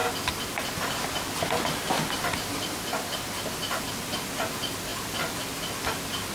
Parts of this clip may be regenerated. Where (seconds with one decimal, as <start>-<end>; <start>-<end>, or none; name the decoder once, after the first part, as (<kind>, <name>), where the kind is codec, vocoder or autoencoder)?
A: none